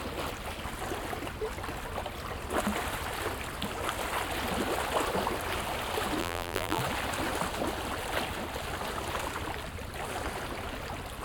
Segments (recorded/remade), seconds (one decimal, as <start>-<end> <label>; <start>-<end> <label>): 0.0-6.2 recorded; 6.2-6.8 remade; 6.8-11.2 recorded